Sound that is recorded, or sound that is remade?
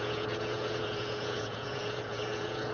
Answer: remade